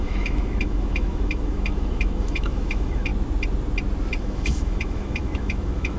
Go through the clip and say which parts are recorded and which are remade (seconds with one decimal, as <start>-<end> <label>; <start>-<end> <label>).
0.0-3.1 remade; 3.1-4.2 recorded; 4.2-6.0 remade